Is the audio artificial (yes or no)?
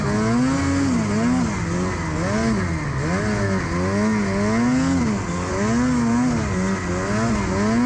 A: no